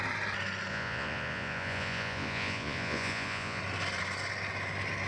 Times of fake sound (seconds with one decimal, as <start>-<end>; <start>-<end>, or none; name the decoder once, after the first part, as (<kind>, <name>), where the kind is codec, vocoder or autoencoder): 0.7-3.6 (vocoder, Vocos)